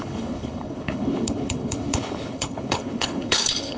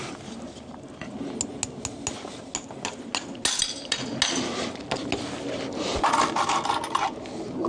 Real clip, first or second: second